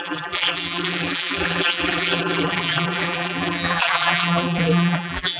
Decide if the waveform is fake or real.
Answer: fake